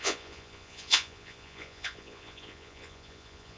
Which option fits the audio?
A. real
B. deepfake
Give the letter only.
B